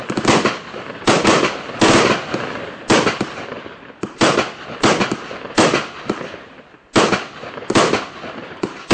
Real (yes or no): yes